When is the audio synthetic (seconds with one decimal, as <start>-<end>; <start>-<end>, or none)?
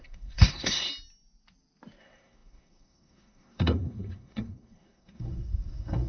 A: 0.0-0.9; 2.0-6.1